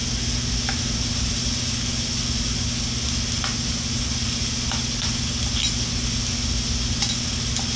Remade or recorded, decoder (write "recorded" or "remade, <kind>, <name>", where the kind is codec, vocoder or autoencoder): recorded